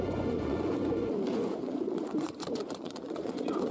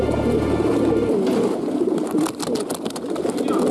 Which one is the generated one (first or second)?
first